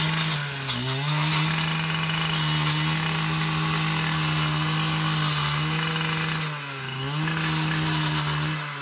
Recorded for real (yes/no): yes